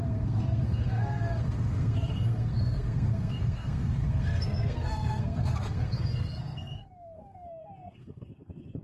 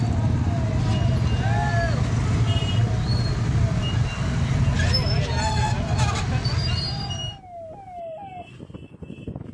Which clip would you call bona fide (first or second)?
second